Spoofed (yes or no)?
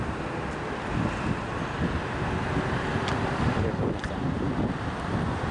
yes